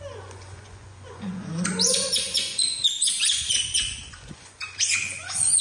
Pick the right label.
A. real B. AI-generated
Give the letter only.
B